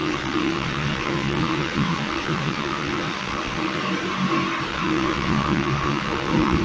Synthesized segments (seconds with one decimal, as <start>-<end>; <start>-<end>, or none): 0.0-3.8; 4.7-6.6